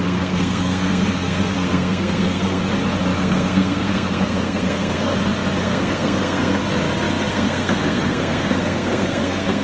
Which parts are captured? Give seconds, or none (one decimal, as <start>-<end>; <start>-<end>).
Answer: 2.6-3.2; 5.1-5.6; 6.6-7.3